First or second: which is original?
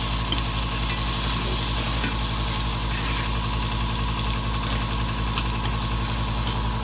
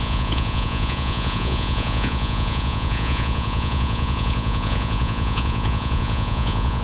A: first